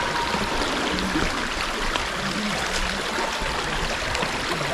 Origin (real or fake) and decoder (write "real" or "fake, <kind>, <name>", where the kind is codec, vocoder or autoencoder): real